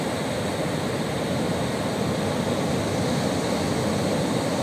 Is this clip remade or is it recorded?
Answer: recorded